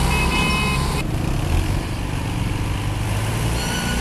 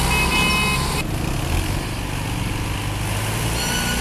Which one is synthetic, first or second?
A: first